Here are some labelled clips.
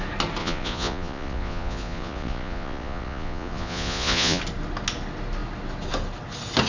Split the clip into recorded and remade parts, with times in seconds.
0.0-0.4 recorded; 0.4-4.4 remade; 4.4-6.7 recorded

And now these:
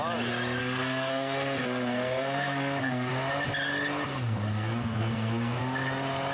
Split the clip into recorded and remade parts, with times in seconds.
0.0-0.6 recorded; 0.6-3.1 remade; 3.1-4.1 recorded; 4.1-5.6 remade; 5.6-6.3 recorded

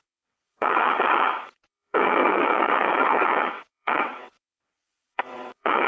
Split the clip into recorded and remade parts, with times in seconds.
0.0-5.9 remade